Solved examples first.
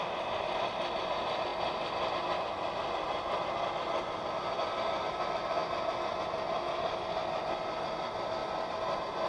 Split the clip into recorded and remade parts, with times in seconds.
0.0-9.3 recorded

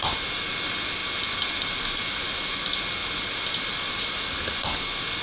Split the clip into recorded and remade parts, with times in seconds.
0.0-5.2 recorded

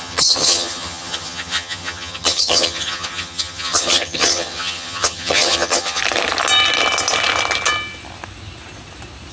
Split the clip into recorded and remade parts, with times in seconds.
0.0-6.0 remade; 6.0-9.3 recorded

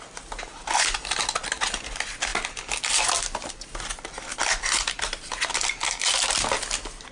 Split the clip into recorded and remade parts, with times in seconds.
0.0-7.1 recorded